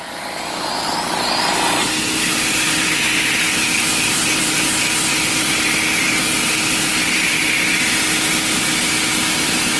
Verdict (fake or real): real